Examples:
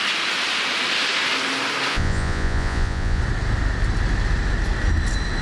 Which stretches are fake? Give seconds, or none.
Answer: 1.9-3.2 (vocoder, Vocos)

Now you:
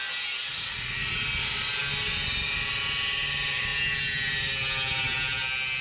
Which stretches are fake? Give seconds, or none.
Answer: 0.5-1.1 (vocoder, Vocos)

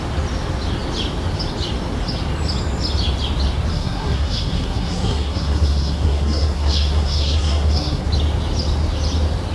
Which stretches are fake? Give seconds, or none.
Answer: 3.7-8.1 (codec, SNAC)

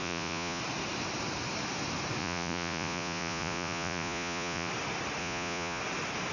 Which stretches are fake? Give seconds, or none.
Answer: 0.0-0.6 (vocoder, Vocos); 2.2-4.7; 5.2-5.8

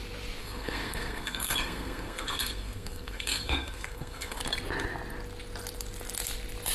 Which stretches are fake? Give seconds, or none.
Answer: 0.4-4.4 (codec, SNAC)

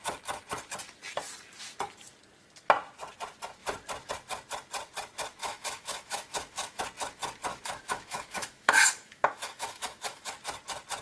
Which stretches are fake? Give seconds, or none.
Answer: 5.4-6.8 (autoencoder, DAC-VAE); 7.5-10.3